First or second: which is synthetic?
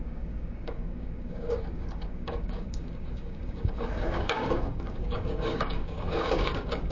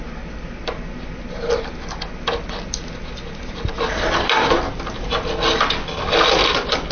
first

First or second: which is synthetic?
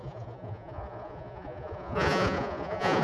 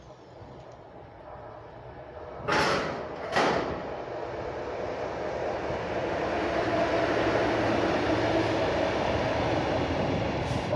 first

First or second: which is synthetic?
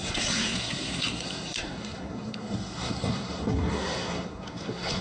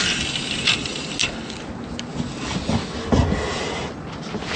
first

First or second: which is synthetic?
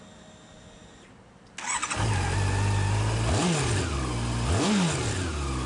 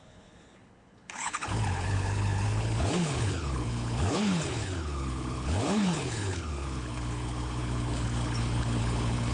second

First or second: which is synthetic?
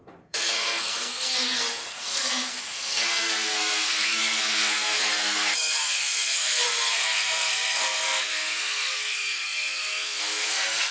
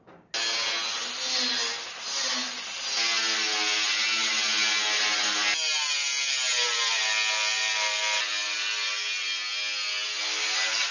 first